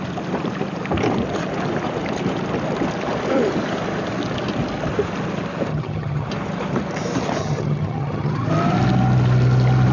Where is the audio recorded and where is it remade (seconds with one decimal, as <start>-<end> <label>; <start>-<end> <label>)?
0.0-5.7 recorded; 5.7-6.3 remade; 6.3-7.4 recorded; 7.4-8.5 remade; 8.5-9.9 recorded

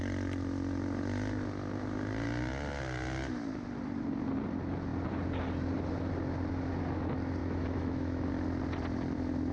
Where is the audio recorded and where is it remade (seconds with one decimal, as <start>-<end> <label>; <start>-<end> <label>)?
0.0-7.4 recorded; 7.4-8.3 remade; 8.3-9.5 recorded

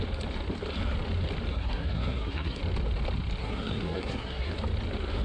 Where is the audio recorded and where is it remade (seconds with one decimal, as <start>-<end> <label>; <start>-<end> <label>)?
0.0-1.5 recorded; 1.5-2.6 remade; 2.6-3.4 recorded; 3.4-4.5 remade; 4.5-5.2 recorded

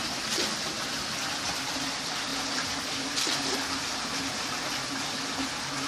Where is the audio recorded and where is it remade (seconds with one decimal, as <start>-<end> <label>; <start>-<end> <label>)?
0.0-2.3 recorded; 2.3-4.3 remade; 4.3-5.9 recorded

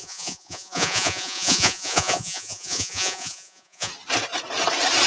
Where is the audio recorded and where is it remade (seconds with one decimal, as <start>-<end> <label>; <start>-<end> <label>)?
0.0-3.9 remade; 3.9-5.1 recorded

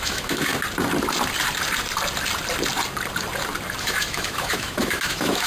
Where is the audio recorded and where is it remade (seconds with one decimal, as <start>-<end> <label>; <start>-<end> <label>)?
0.0-0.5 remade; 0.5-3.8 recorded; 3.8-5.5 remade

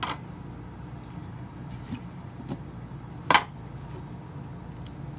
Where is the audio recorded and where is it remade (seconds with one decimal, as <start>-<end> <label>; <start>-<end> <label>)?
0.0-1.2 recorded; 1.2-2.3 remade; 2.3-5.2 recorded

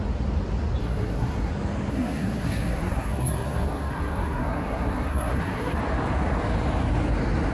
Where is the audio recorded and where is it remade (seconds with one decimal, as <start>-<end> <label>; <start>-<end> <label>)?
0.0-0.8 recorded; 0.8-1.5 remade; 1.5-1.9 recorded; 1.9-5.8 remade; 5.8-7.5 recorded